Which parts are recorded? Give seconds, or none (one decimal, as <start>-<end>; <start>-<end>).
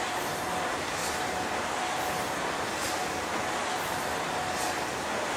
0.0-5.4